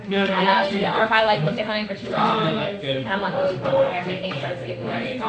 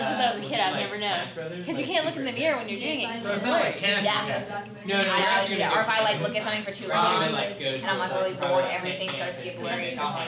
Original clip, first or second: second